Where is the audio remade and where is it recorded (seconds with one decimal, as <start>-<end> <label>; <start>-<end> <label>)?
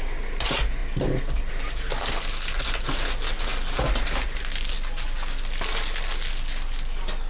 0.0-7.3 recorded